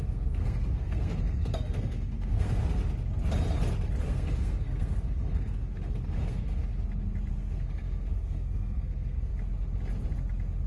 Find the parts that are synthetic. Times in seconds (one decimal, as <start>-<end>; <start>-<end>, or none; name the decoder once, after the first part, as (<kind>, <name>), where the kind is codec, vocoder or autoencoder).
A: 0.0-2.8 (codec, SNAC); 4.0-6.7; 7.3-9.3